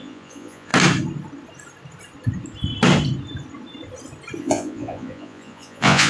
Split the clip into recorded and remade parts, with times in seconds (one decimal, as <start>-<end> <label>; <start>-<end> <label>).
0.0-0.7 remade; 0.7-4.4 recorded; 4.4-6.1 remade